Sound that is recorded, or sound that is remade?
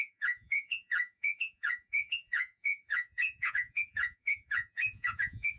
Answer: remade